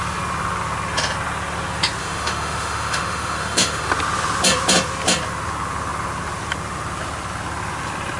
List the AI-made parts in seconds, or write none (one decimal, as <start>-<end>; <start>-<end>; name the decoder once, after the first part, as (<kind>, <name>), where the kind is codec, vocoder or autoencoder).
2.0-3.9 (autoencoder, DAC-VAE)